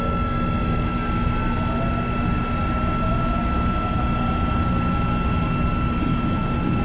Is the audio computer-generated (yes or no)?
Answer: no